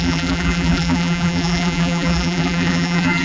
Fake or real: fake